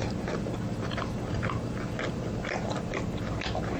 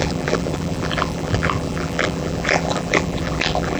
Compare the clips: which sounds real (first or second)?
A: first